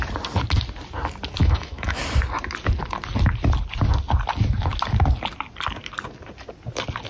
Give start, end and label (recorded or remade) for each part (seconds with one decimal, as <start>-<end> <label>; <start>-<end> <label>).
0.0-1.4 recorded; 1.4-2.0 remade; 2.0-7.1 recorded